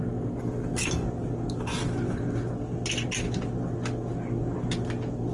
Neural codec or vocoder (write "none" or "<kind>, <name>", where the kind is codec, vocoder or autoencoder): none